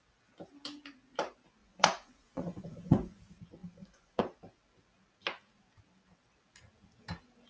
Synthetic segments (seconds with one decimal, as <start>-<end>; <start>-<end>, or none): 1.6-3.2; 3.6-4.2